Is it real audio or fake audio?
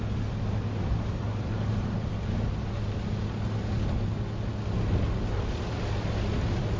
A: real